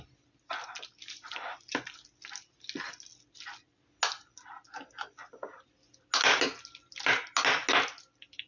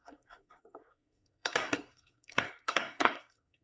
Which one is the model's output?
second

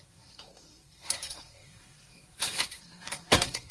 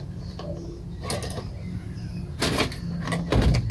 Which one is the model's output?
first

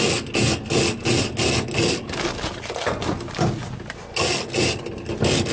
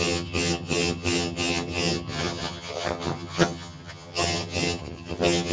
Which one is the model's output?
second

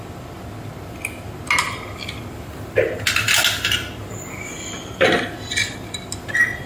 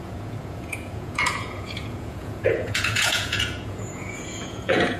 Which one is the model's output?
second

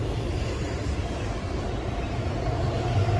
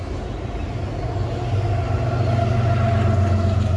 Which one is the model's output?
first